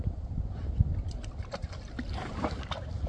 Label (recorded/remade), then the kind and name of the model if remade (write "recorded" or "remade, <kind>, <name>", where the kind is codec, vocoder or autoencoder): remade, vocoder, BigVGAN v2